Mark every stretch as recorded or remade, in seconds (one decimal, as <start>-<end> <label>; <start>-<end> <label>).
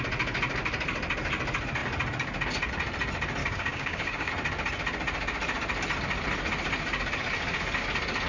0.0-3.4 recorded; 3.4-4.3 remade; 4.3-8.3 recorded